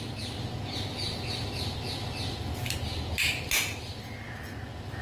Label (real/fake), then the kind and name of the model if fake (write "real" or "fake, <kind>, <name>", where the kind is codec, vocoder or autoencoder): real